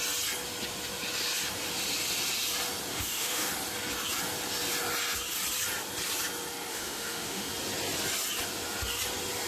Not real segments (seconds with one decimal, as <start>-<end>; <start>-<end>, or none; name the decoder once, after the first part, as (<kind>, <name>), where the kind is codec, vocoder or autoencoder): 2.9-3.5 (autoencoder, DAC-VAE); 6.7-7.5